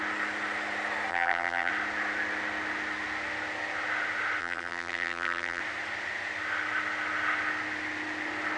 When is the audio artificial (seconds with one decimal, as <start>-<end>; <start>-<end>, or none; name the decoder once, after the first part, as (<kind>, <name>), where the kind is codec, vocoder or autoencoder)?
1.1-1.7 (vocoder, BigVGAN v2); 4.4-5.6